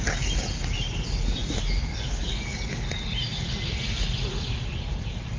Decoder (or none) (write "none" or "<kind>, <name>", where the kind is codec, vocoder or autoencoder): none